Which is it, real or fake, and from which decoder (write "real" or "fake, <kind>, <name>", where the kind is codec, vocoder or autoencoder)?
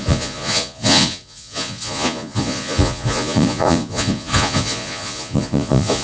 fake, vocoder, Vocos